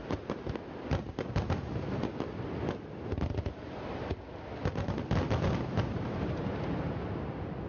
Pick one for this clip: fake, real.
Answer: real